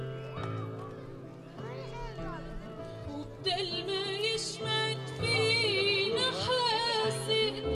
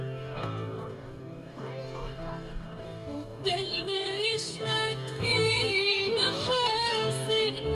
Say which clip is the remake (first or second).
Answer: second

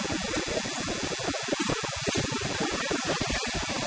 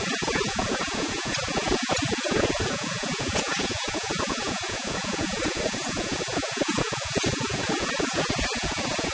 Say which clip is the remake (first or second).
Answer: second